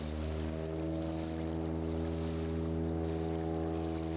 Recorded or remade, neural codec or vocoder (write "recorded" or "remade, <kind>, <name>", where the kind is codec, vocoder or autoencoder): recorded